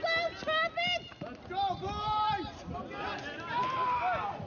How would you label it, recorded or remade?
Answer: recorded